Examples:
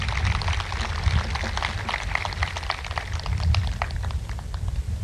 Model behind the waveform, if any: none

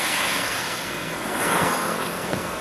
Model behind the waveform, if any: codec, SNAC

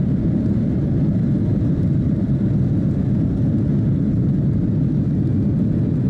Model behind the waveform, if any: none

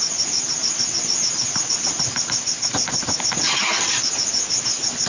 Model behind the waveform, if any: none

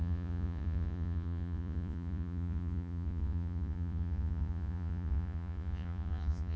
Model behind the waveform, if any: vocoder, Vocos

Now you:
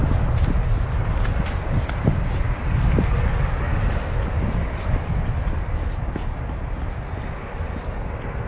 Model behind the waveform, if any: none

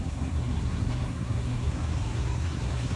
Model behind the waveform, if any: codec, SNAC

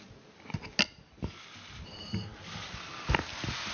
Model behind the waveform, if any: none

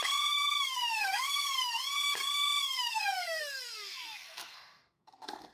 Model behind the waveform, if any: codec, SNAC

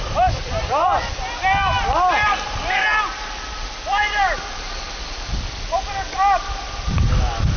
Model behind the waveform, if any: none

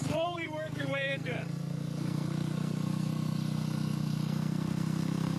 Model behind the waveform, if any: codec, SNAC